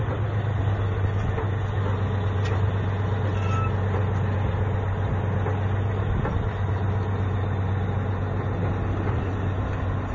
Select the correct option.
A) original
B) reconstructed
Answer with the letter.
A